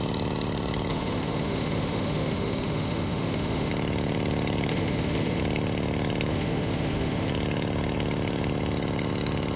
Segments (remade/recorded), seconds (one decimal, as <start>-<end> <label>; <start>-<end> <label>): 0.0-0.9 recorded; 0.9-3.7 remade; 3.7-4.7 recorded; 4.7-5.4 remade; 5.4-6.3 recorded; 6.3-7.3 remade; 7.3-9.6 recorded